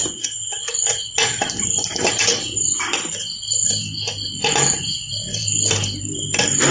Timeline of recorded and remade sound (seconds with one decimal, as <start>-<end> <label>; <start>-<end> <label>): 0.0-0.6 recorded; 0.6-3.8 remade; 3.8-4.7 recorded; 4.7-5.4 remade; 5.4-6.0 recorded; 6.0-6.7 remade